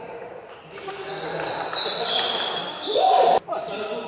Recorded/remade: recorded